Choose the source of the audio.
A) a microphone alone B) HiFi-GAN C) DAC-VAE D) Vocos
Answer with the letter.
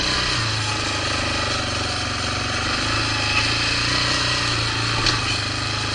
A